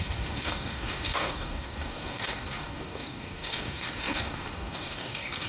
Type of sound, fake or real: fake